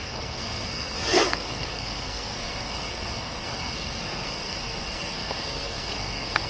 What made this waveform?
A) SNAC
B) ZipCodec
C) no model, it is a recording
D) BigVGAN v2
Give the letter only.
A